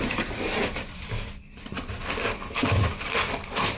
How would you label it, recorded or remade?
recorded